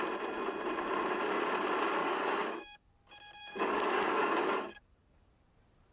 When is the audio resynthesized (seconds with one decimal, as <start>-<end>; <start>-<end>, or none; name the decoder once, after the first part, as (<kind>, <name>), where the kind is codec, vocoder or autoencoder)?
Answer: 2.0-2.9 (codec, DAC); 3.4-5.3